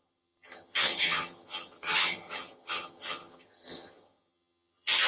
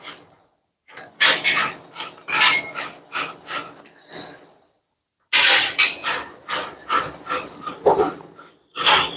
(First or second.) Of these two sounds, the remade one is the first